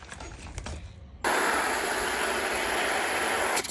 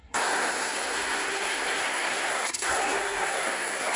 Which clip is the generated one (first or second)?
second